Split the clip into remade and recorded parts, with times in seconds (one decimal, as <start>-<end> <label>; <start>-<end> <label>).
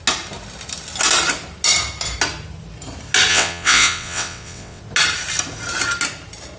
0.0-3.3 recorded; 3.3-4.8 remade; 4.8-6.6 recorded